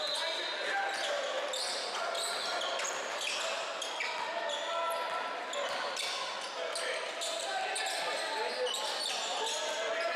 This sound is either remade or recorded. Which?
recorded